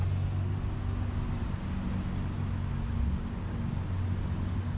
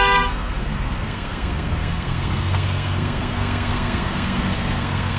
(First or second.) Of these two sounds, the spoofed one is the second